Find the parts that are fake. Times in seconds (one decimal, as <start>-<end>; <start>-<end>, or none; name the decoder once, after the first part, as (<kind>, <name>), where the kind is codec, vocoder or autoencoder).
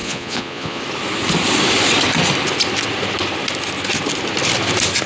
0.0-0.8 (vocoder, Vocos)